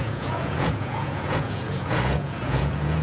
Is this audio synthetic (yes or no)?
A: yes